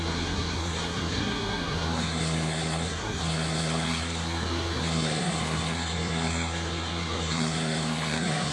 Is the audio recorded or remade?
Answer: remade